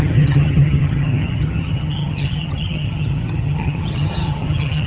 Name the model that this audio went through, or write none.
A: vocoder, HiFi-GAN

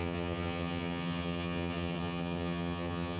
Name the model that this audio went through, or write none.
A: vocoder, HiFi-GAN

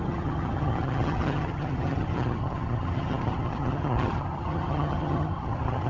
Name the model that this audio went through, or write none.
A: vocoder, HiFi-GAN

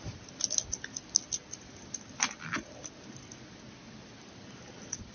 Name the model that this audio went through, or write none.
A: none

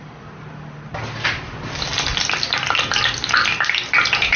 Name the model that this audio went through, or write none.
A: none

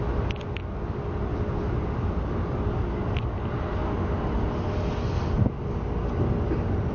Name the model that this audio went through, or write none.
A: none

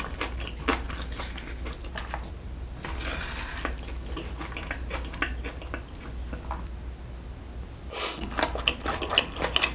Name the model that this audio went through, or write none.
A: none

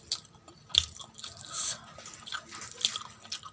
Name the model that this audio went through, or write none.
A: none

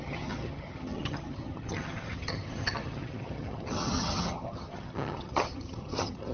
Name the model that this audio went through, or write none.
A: vocoder, HiFi-GAN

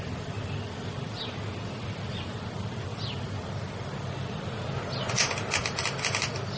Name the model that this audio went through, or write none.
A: none